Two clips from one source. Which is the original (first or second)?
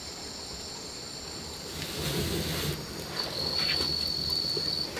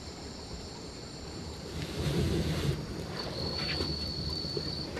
first